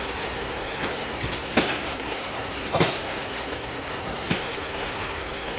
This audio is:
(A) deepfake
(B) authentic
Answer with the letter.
A